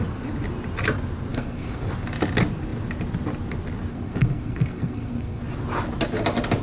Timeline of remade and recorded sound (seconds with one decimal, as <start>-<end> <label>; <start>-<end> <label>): 0.0-1.3 recorded; 1.3-1.9 remade; 1.9-3.9 recorded; 3.9-5.4 remade; 5.4-6.6 recorded